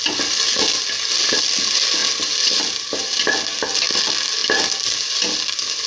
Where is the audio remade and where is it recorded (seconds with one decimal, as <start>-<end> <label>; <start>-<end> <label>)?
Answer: 0.0-5.9 recorded